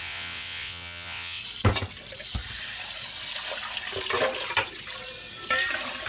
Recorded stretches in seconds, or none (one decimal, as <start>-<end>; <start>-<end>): 1.4-6.1